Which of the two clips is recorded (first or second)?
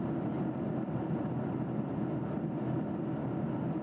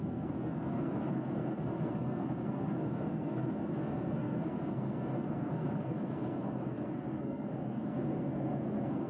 first